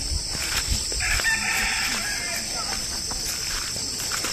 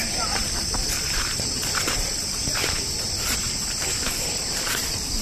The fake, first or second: second